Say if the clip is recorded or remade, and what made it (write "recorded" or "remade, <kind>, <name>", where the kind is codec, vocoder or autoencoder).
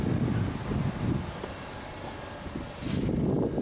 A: recorded